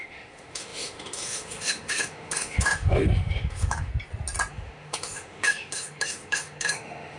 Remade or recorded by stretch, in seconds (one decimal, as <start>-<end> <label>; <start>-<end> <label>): 0.0-3.9 remade; 3.9-4.5 recorded; 4.5-7.2 remade